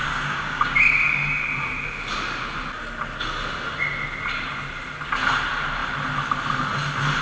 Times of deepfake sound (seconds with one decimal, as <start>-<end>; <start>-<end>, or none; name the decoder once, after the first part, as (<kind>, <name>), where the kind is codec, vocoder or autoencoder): 0.0-1.4 (codec, DAC)